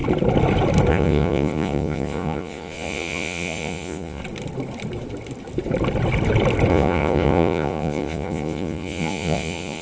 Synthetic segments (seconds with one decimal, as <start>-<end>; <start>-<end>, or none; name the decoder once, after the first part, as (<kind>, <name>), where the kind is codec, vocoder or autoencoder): 0.9-4.2 (vocoder, Vocos); 6.7-9.8